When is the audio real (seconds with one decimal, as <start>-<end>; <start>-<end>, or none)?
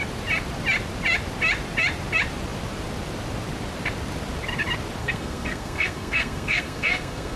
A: 0.0-5.0